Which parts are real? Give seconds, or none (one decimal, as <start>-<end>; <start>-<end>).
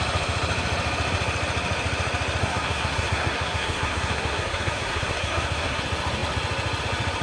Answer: 0.0-2.4; 5.8-7.2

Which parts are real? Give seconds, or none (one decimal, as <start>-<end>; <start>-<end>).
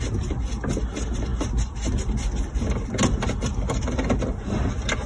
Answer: 0.0-5.1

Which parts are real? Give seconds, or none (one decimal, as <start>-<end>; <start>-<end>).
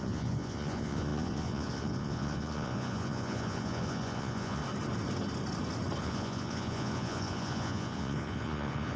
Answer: 4.6-6.0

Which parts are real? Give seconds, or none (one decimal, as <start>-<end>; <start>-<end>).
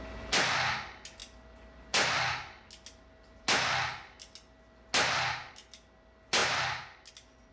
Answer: 0.0-7.5